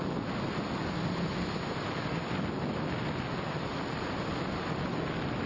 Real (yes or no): yes